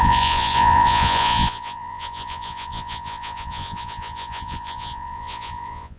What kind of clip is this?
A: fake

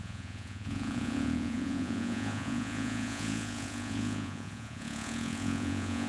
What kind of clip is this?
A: fake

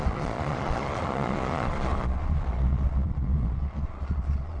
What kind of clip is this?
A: fake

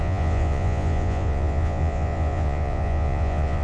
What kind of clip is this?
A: fake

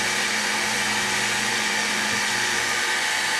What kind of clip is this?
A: fake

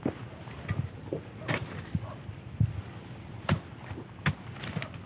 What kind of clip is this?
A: real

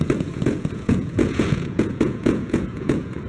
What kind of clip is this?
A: fake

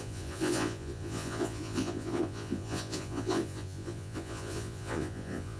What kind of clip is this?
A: fake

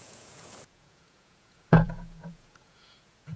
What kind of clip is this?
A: fake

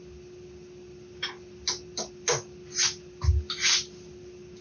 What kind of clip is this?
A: real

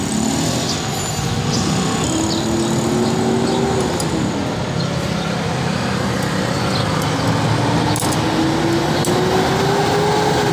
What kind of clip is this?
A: real